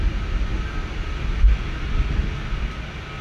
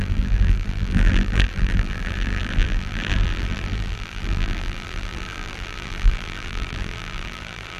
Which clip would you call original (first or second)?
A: first